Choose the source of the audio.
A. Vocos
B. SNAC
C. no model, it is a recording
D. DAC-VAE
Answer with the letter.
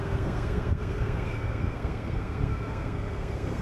B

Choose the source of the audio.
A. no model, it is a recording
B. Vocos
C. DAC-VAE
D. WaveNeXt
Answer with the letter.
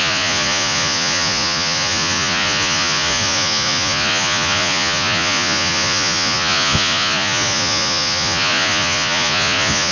B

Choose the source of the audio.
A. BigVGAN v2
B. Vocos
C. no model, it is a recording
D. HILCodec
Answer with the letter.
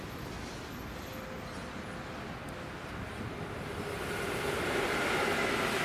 C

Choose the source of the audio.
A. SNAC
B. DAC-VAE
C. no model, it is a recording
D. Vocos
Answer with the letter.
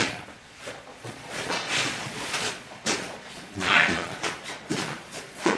D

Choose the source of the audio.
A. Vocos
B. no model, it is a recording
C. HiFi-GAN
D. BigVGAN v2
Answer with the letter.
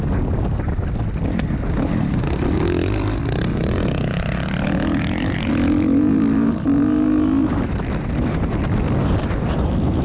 B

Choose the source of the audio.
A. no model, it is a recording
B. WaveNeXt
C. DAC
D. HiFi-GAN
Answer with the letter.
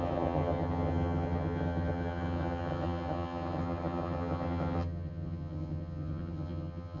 D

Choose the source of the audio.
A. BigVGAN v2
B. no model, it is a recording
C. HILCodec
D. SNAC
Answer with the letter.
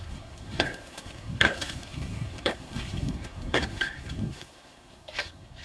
D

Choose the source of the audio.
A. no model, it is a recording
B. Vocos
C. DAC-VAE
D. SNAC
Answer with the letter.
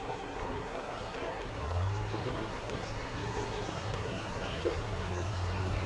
D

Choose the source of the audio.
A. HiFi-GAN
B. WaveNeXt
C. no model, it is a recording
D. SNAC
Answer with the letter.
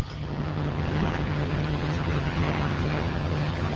A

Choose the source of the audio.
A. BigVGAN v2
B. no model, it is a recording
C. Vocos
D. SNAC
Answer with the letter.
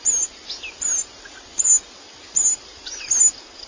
B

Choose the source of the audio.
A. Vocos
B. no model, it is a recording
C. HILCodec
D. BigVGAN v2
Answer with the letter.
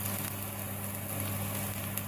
B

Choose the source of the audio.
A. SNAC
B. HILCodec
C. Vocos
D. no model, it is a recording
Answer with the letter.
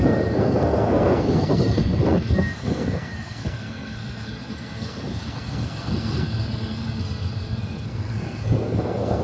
A